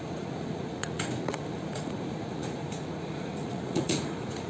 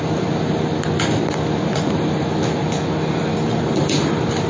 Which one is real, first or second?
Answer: second